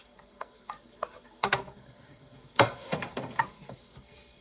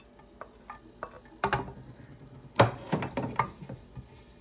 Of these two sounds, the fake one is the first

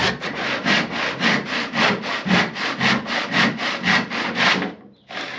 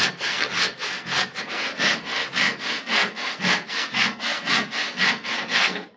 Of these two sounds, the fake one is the second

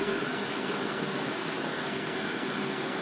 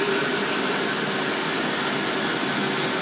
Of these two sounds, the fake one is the first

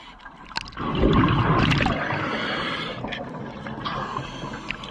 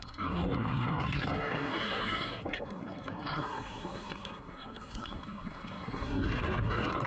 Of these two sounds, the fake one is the second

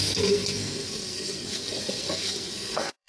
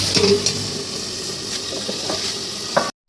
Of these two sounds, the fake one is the first